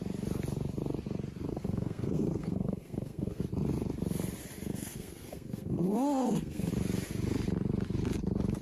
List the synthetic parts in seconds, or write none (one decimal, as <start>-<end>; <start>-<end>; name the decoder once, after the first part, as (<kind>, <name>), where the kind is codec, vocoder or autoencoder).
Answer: 1.5-3.4 (codec, SNAC); 4.7-6.7